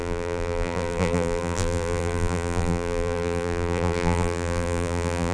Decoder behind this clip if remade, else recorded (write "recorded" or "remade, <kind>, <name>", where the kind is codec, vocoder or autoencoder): remade, vocoder, BigVGAN v2